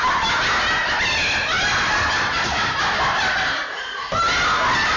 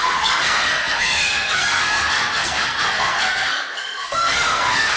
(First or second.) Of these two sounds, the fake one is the second